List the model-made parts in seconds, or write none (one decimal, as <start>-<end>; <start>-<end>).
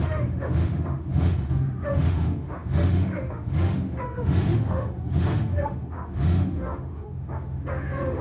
0.0-8.2